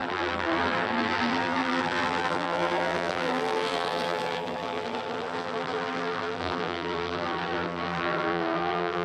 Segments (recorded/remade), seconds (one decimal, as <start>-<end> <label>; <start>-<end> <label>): 0.0-9.0 remade